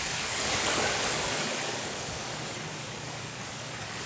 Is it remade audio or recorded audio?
remade